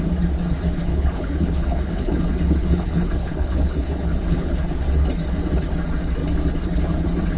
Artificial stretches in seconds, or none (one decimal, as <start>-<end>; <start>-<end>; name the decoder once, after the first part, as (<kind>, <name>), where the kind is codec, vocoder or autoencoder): 0.9-2.2 (codec, HILCodec); 2.6-4.6